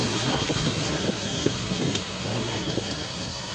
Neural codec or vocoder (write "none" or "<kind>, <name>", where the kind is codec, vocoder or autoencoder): codec, SNAC